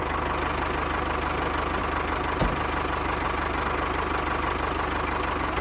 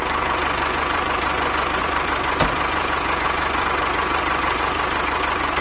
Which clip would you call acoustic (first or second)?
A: first